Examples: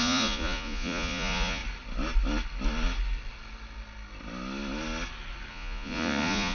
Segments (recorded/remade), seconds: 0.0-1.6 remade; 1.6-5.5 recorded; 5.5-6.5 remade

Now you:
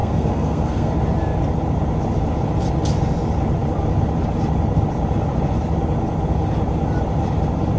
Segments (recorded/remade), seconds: 0.0-0.9 remade; 0.9-7.8 recorded

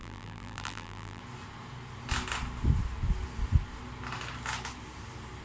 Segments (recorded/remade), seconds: 0.0-1.2 remade; 1.2-5.4 recorded

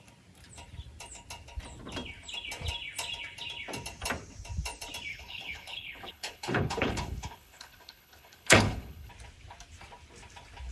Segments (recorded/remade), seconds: 0.0-5.1 recorded; 5.1-9.1 remade; 9.1-10.7 recorded

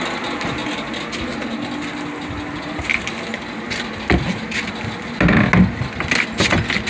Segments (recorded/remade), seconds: 0.0-6.9 recorded

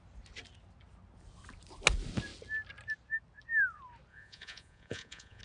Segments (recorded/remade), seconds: 0.0-4.1 recorded; 4.1-5.4 remade